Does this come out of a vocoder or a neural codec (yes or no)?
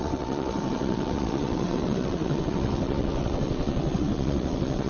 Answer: yes